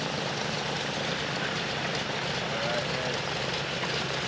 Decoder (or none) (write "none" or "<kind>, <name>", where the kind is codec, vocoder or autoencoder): none